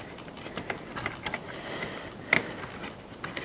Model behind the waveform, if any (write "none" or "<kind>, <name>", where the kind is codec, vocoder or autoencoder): none